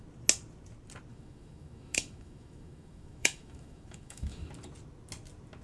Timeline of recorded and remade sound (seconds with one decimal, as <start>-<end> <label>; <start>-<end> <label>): 0.0-1.1 recorded; 1.1-4.5 remade; 4.5-5.6 recorded